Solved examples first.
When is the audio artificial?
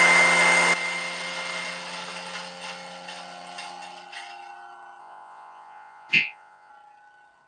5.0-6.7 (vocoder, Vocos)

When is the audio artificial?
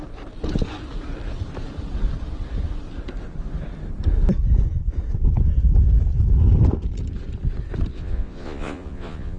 7.9-9.4 (vocoder, Vocos)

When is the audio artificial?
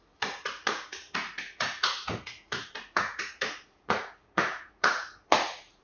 0.0-5.8 (vocoder, Vocos)